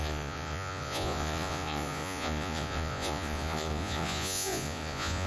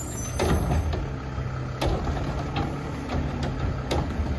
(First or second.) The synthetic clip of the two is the first